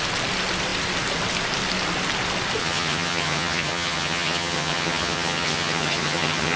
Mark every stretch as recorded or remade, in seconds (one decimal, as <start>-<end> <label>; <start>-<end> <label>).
0.0-2.6 recorded; 2.6-6.6 remade